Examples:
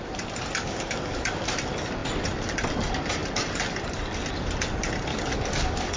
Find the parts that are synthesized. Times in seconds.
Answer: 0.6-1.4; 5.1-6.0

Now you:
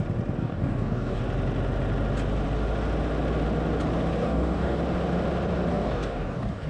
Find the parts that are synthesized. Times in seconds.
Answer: 0.4-1.2; 4.2-4.8; 5.7-6.7

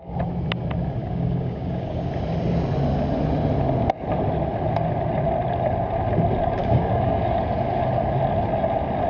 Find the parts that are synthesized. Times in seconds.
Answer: 1.0-2.1; 6.6-7.2

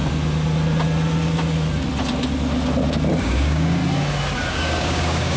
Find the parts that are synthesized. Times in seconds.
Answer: 3.2-3.8; 4.5-5.4

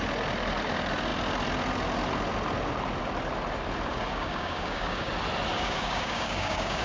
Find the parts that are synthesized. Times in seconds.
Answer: 3.9-5.1; 5.5-6.8

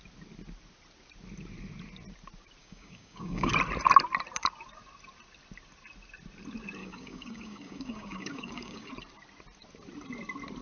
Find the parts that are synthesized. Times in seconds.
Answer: 2.6-3.5; 6.8-8.9